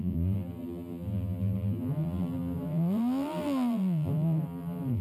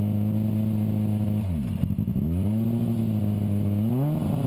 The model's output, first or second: first